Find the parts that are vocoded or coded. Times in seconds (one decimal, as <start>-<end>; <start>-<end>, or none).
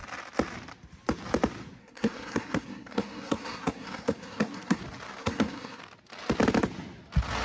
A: 1.8-4.8; 5.2-5.8